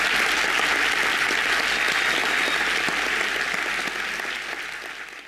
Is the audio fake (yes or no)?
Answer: no